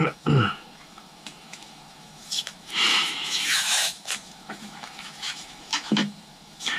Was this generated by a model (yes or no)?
yes